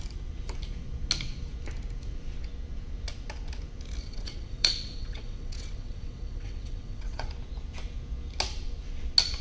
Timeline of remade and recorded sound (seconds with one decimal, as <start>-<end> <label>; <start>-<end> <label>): 0.0-4.0 recorded; 4.0-7.3 remade; 7.3-9.4 recorded